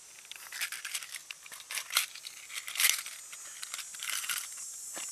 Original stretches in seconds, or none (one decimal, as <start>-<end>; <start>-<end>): 0.0-1.2; 2.2-3.9